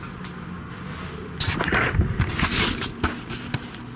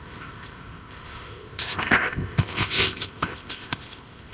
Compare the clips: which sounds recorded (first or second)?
first